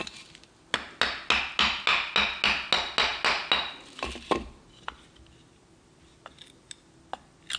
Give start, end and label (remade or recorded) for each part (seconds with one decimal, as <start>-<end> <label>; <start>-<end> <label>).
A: 0.0-7.6 recorded